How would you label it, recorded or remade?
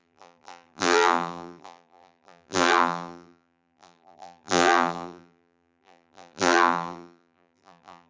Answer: remade